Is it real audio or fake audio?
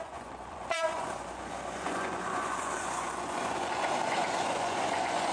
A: fake